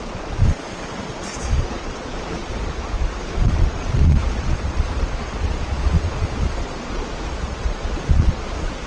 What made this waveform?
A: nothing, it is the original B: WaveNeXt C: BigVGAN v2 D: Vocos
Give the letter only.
D